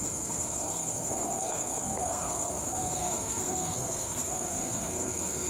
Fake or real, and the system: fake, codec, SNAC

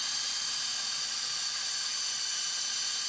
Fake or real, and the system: real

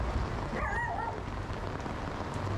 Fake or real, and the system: real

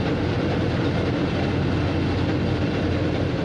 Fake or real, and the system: real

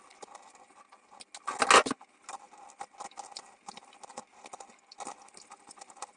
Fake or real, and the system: real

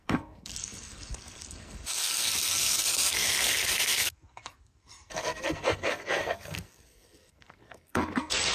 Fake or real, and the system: fake, codec, SNAC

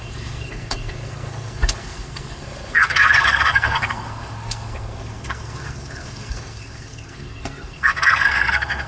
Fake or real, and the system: fake, codec, SNAC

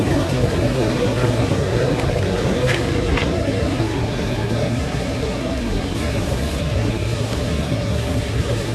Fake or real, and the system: fake, codec, SNAC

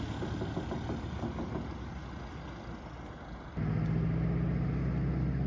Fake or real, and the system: real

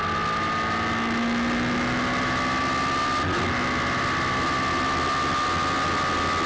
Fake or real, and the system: real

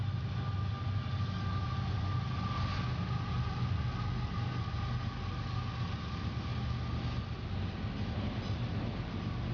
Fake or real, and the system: real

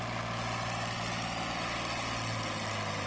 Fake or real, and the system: real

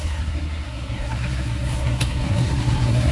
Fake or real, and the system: fake, codec, SNAC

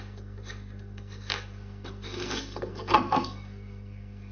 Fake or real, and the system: fake, codec, SNAC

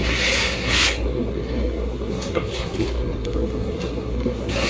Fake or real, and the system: fake, codec, SNAC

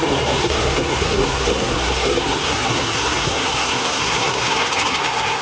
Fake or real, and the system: fake, codec, SNAC